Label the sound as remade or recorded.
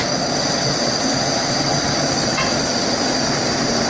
recorded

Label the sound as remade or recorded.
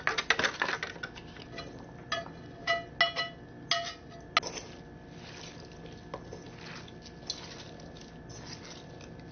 recorded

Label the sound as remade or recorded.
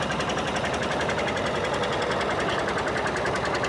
recorded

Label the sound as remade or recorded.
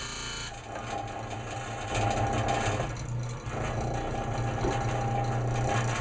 recorded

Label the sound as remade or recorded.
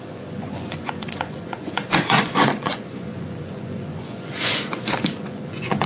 remade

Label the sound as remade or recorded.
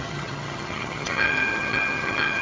remade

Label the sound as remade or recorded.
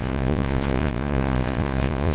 remade